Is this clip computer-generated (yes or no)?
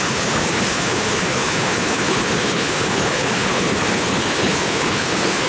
yes